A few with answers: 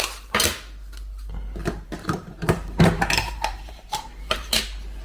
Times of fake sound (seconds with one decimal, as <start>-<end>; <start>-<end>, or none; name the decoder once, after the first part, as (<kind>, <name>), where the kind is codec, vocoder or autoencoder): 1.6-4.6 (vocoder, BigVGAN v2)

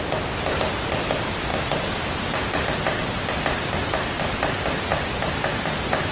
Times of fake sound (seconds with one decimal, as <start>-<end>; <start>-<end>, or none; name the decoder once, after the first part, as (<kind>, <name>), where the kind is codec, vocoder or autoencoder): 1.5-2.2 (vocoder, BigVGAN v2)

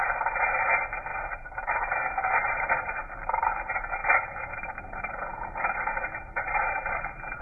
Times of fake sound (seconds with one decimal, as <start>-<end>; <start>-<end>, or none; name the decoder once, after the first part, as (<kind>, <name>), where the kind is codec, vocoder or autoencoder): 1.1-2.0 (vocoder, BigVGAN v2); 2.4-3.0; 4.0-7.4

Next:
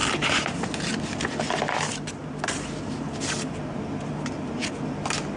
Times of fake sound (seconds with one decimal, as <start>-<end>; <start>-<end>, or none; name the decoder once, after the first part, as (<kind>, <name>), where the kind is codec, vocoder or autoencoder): none

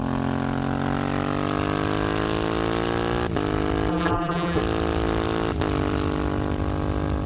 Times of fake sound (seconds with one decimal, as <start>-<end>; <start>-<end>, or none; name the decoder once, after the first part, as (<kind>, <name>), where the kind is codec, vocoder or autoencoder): 3.9-4.6 (vocoder, BigVGAN v2)

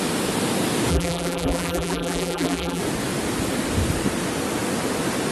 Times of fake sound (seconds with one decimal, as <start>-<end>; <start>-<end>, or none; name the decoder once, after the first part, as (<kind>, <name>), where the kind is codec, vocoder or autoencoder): 0.9-2.8 (vocoder, BigVGAN v2)

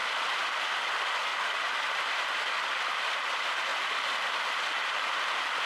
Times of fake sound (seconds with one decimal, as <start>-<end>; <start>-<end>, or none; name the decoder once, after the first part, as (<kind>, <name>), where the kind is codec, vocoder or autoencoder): 0.0-0.8 (vocoder, BigVGAN v2); 1.3-2.6